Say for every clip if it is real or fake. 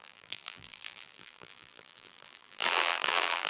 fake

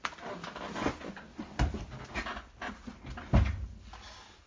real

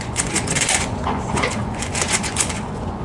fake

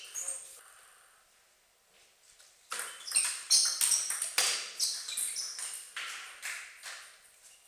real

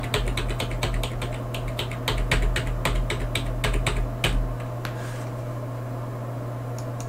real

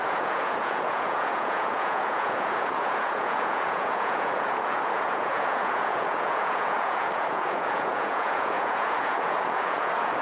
fake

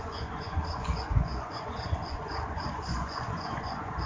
fake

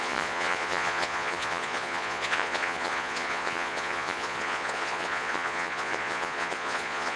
fake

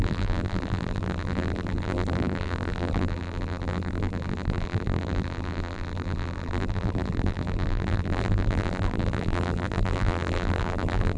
fake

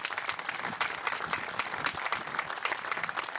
real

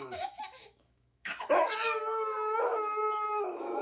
fake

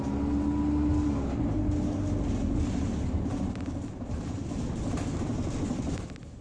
real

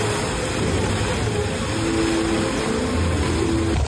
real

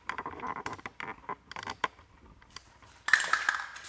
fake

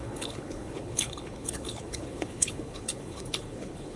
fake